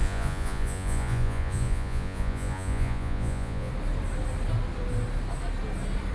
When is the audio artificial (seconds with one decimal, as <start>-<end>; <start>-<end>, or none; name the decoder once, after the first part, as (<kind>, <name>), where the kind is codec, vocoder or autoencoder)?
0.0-3.7 (vocoder, Vocos)